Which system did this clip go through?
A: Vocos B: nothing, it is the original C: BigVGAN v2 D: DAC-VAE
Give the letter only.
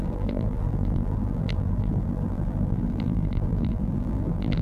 C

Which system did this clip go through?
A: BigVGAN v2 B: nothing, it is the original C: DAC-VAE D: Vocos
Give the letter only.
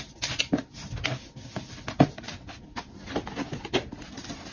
B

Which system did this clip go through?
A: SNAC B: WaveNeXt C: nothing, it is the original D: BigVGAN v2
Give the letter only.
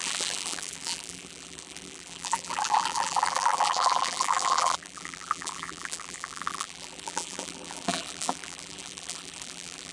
D